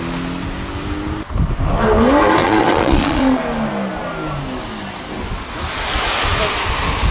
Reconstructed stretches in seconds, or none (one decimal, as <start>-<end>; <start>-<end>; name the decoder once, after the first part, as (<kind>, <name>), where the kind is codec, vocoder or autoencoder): 2.4-3.4 (vocoder, Vocos)